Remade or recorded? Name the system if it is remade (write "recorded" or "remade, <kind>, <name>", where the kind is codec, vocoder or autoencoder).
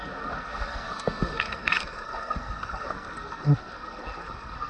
remade, codec, SNAC